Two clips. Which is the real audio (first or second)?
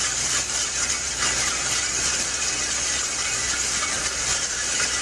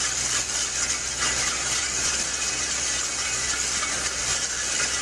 second